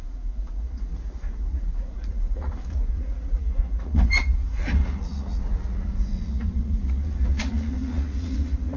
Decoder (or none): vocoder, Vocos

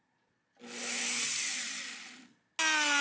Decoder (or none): none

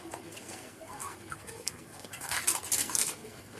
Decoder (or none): codec, SNAC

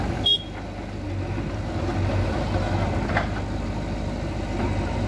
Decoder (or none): none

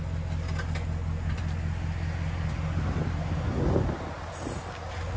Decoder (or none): none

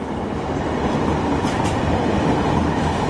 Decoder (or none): none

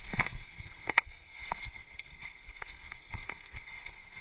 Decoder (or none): codec, SNAC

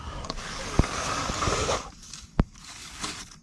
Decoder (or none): codec, DAC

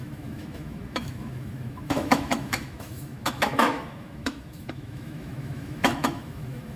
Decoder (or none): autoencoder, DAC-VAE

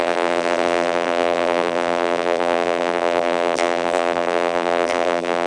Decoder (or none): vocoder, BigVGAN v2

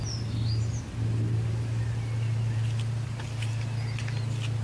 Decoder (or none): vocoder, BigVGAN v2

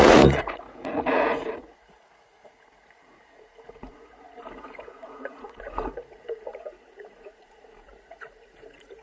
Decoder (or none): vocoder, Vocos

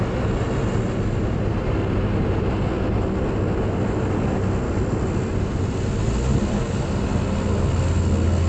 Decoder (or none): none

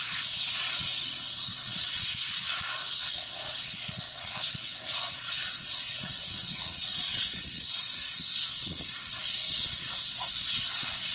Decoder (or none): vocoder, Vocos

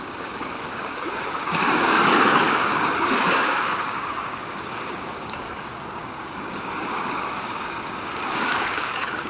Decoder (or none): codec, DAC